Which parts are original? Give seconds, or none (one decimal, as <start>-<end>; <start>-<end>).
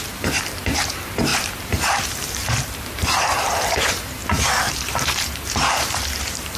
4.2-4.8